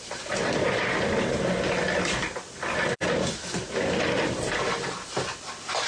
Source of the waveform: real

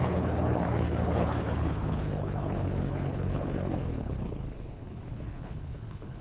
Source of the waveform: fake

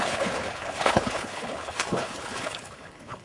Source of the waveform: fake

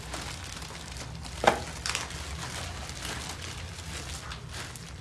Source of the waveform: real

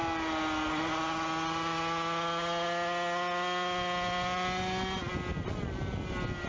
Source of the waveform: real